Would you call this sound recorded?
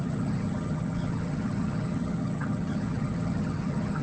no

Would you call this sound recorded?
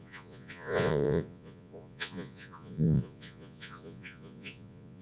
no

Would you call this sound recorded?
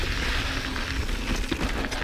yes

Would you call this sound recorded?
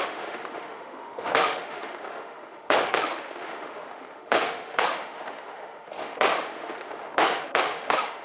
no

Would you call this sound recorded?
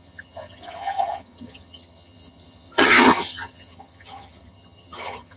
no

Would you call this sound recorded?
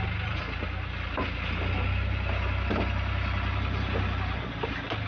yes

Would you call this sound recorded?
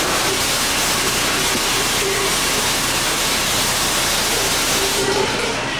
yes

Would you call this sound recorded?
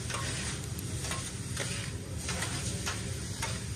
no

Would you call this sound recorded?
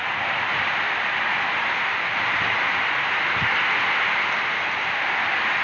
yes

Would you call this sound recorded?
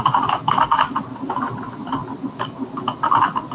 yes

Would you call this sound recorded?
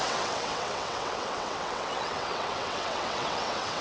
no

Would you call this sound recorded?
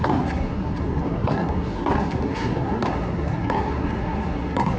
no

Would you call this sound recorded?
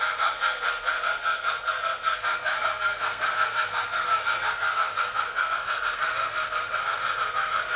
no